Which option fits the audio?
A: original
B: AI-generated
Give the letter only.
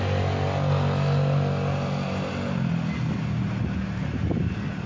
A